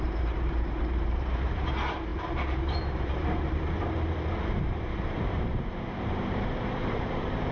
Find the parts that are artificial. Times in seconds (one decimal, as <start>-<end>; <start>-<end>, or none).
0.0-7.5